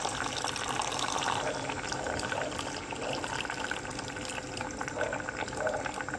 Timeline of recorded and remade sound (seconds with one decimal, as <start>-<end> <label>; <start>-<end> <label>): 0.0-6.2 recorded